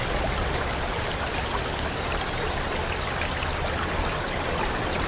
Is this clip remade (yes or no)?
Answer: no